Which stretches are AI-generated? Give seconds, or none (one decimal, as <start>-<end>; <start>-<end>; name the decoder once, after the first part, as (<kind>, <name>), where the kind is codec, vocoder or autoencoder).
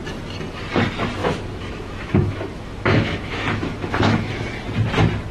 1.2-4.4 (autoencoder, DAC-VAE)